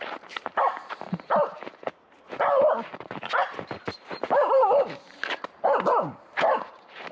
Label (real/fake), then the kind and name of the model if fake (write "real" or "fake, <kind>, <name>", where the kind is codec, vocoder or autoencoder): fake, vocoder, BigVGAN v2